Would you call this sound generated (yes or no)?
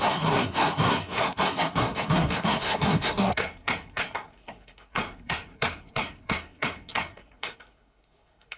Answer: yes